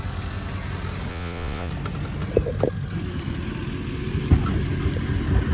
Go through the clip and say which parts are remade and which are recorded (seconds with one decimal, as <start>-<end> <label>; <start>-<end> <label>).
0.0-1.1 recorded; 1.1-1.7 remade; 1.7-5.5 recorded